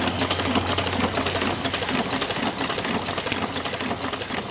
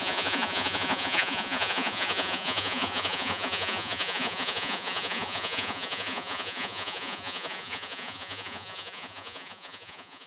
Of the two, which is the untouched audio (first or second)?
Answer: first